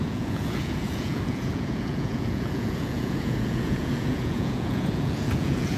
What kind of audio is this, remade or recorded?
remade